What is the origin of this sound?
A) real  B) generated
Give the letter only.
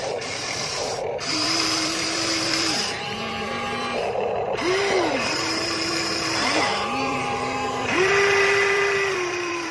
B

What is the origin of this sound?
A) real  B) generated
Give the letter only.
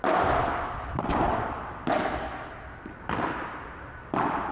A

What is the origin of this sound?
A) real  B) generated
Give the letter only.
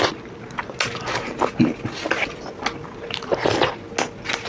A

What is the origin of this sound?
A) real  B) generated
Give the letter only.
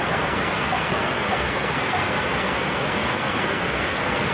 B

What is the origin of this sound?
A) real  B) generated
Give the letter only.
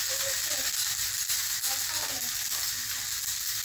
A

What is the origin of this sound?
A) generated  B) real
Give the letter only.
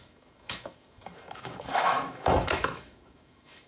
A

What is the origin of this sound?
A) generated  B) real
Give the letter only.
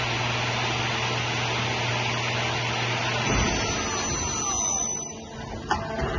B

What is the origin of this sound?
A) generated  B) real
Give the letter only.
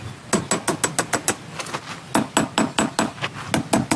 B